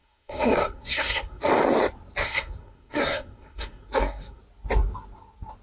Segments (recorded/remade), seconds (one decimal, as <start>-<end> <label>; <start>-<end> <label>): 0.0-1.5 remade; 1.5-2.2 recorded; 2.2-4.4 remade; 4.4-5.6 recorded